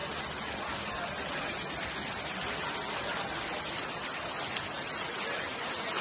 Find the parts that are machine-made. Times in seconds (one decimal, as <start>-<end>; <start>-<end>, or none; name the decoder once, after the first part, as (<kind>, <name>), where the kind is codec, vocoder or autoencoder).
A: none